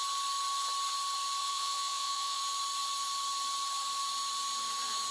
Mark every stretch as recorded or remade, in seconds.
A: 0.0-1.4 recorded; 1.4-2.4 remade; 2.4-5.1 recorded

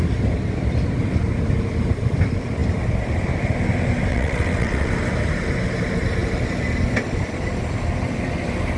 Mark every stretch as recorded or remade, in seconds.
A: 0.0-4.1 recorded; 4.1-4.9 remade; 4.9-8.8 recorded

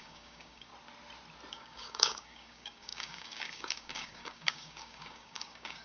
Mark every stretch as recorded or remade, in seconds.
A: 0.0-0.7 remade; 0.7-1.5 recorded; 1.5-5.8 remade

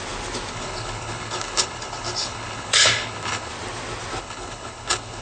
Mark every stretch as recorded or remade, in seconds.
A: 0.0-0.5 recorded; 0.5-3.5 remade; 3.5-4.2 recorded; 4.2-5.2 remade

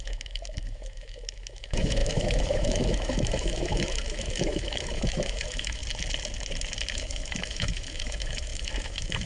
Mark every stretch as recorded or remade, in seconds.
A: 0.0-5.8 remade; 5.8-6.9 recorded; 6.9-9.3 remade

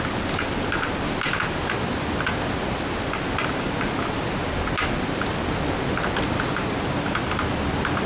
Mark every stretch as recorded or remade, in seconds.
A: 0.0-8.1 recorded